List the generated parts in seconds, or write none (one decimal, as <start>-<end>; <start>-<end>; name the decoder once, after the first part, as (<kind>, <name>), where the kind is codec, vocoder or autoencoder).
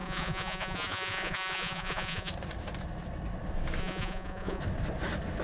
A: 0.0-2.3 (vocoder, Vocos); 3.8-4.6